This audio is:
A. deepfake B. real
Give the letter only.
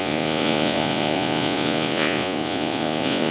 A